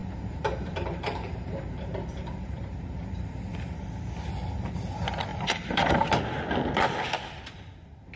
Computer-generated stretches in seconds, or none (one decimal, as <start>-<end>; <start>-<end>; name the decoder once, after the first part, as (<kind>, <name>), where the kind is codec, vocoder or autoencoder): 0.0-3.9 (vocoder, BigVGAN v2); 5.3-6.0